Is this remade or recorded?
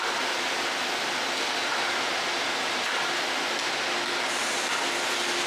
recorded